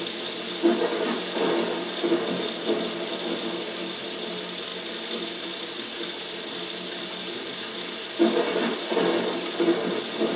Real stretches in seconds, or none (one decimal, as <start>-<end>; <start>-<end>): 0.0-10.4